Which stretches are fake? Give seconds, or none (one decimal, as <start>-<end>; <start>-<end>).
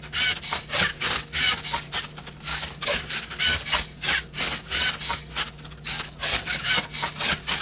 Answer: 0.9-1.9; 2.5-3.4; 5.3-6.7